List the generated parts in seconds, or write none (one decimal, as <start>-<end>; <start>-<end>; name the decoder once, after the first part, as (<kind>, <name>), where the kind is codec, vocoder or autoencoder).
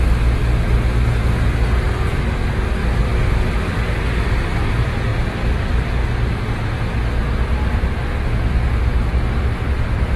none